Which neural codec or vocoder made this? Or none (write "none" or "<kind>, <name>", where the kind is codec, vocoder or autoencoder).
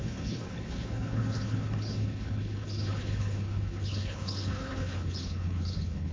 codec, HILCodec